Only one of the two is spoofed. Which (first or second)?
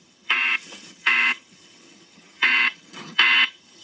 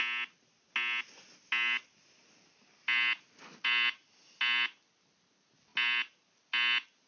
first